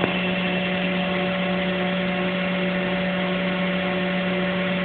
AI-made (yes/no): no